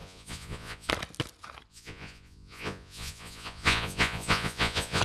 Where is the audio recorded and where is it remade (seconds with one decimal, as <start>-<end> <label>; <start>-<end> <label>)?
0.0-0.9 remade; 0.9-1.7 recorded; 1.7-5.0 remade